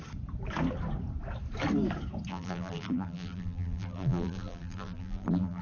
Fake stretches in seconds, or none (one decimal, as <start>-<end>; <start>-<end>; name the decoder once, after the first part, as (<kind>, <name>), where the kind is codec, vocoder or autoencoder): 2.3-5.6 (vocoder, BigVGAN v2)